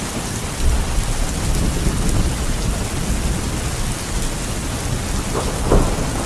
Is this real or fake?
real